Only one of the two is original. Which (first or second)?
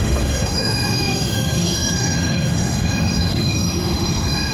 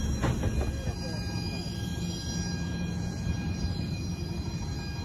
second